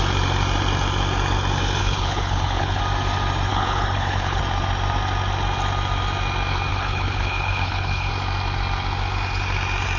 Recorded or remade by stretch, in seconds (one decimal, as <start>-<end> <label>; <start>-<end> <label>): 0.0-1.8 recorded; 1.8-2.8 remade; 2.8-3.5 recorded; 3.5-4.4 remade; 4.4-6.7 recorded; 6.7-8.1 remade; 8.1-10.0 recorded